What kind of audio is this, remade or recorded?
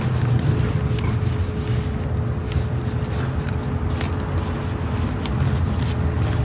recorded